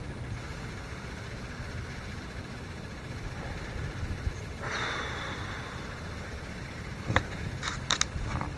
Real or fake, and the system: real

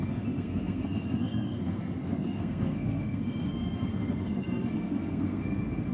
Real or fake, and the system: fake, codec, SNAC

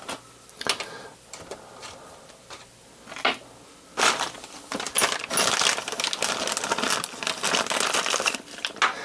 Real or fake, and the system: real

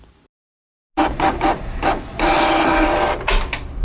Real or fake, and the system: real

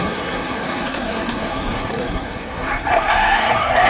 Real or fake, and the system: fake, codec, SNAC